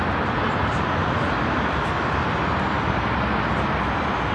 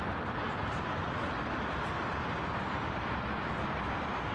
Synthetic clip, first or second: second